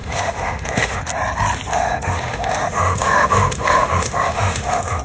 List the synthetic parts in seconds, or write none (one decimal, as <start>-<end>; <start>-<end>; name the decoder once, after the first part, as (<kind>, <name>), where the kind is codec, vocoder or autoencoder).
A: 0.0-1.0 (autoencoder, DAC-VAE); 1.7-5.0

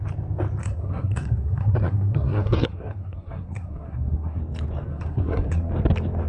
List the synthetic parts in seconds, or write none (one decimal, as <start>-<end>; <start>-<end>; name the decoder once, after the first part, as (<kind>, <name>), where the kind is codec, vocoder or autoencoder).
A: 0.6-4.4 (codec, SNAC); 4.9-5.7

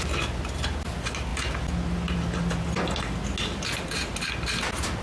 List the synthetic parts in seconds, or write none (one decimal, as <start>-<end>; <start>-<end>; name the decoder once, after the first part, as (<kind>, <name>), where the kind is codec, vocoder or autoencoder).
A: none

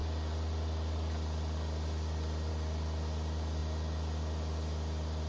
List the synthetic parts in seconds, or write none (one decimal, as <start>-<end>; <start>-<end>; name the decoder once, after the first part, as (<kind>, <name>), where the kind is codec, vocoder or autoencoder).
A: none